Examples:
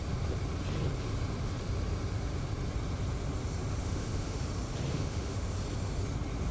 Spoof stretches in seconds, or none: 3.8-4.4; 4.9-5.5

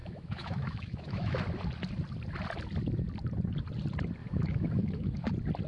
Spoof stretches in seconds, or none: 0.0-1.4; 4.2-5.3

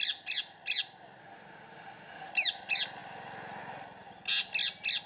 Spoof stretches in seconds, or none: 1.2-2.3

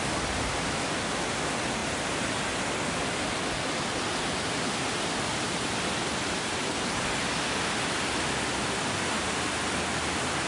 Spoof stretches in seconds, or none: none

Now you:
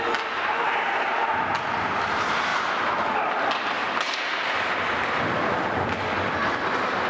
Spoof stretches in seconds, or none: none